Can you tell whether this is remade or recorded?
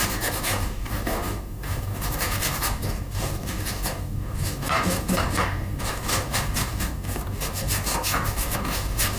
remade